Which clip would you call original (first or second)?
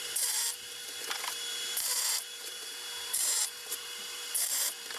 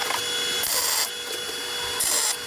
second